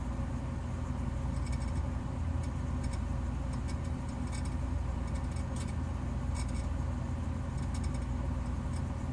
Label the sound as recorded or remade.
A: recorded